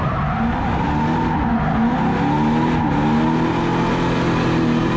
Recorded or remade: recorded